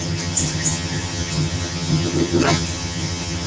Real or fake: fake